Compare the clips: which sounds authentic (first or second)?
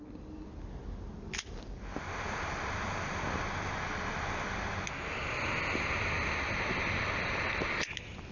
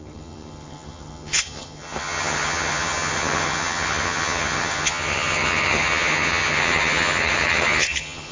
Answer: first